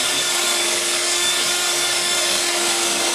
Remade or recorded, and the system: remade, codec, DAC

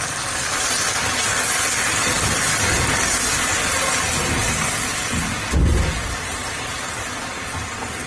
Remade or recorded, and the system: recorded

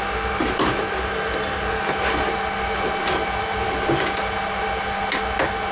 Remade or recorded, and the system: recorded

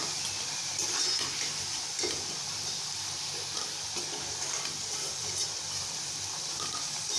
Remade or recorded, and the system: remade, vocoder, BigVGAN v2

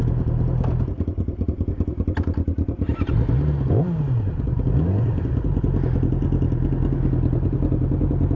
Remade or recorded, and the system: recorded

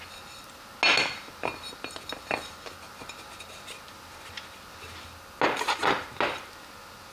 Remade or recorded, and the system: recorded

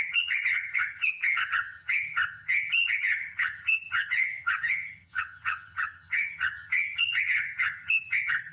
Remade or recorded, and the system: remade, vocoder, HiFi-GAN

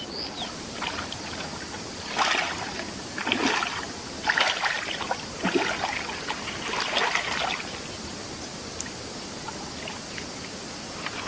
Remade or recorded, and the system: recorded